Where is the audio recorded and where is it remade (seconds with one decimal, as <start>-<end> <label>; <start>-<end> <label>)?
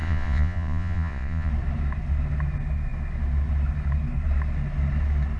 0.0-1.5 remade; 1.5-5.4 recorded